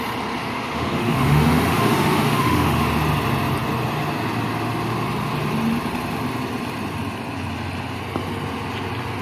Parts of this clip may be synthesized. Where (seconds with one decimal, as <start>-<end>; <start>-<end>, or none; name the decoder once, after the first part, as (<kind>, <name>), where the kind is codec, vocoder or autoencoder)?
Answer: 0.4-2.8 (autoencoder, DAC-VAE)